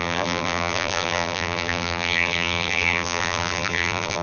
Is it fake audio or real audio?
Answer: fake